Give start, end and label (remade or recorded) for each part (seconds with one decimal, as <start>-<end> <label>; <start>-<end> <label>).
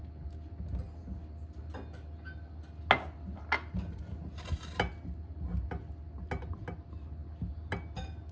0.0-8.3 recorded